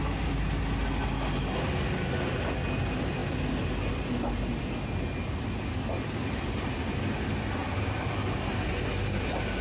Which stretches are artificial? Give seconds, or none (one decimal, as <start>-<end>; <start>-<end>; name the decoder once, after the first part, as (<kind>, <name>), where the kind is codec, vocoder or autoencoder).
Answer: none